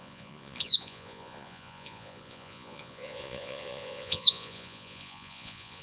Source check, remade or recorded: remade